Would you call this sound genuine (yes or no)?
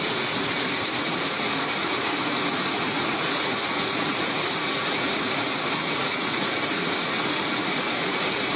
no